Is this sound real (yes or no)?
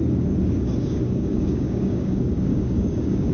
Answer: no